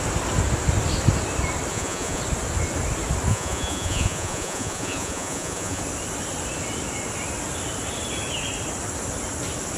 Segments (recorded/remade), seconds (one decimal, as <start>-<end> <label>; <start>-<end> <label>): 0.0-1.7 recorded; 1.7-2.2 remade; 2.2-3.3 recorded; 3.3-5.8 remade; 5.8-9.8 recorded